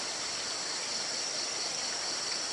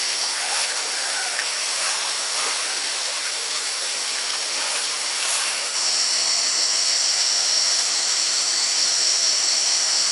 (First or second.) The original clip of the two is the first